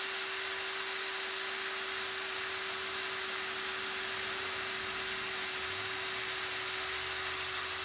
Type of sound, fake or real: real